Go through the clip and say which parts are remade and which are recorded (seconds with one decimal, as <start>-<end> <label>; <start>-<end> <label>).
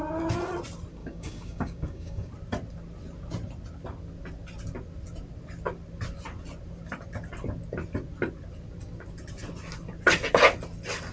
0.0-1.0 recorded; 1.0-2.3 remade; 2.3-11.1 recorded